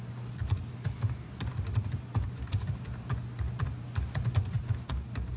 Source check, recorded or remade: recorded